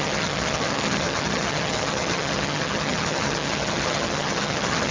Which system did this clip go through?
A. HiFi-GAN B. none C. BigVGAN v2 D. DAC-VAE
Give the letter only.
A